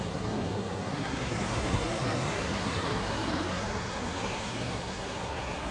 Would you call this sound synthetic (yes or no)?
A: yes